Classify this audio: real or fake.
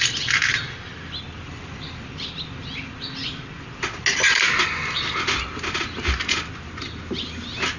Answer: real